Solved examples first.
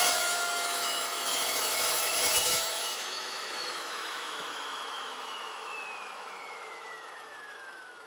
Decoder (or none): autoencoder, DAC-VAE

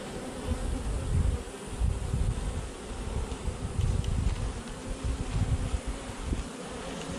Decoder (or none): none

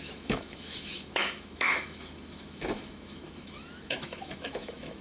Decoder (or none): autoencoder, DAC-VAE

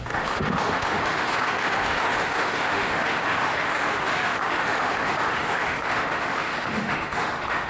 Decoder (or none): autoencoder, DAC-VAE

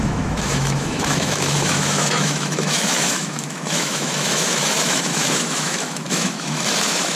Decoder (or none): autoencoder, DAC-VAE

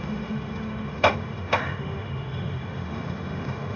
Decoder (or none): autoencoder, DAC-VAE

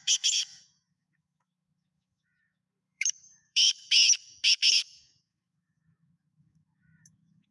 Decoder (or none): autoencoder, DAC-VAE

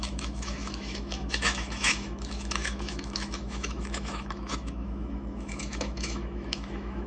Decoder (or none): autoencoder, DAC-VAE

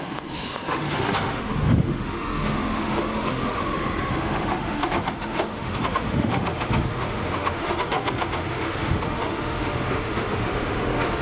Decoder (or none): autoencoder, DAC-VAE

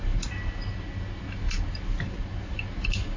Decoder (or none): none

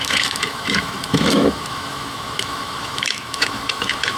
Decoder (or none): autoencoder, DAC-VAE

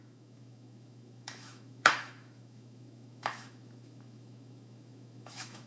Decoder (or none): autoencoder, DAC-VAE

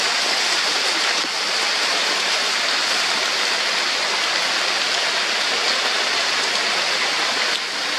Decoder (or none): none